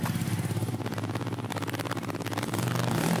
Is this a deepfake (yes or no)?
no